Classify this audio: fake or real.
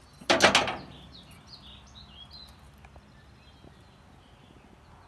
real